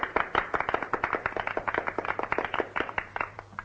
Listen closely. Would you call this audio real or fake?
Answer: fake